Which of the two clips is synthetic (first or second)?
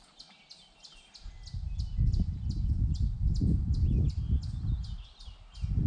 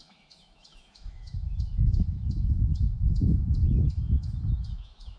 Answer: second